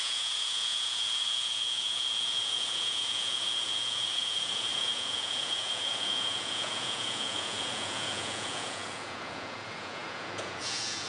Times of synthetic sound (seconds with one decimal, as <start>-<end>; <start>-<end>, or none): 0.0-11.1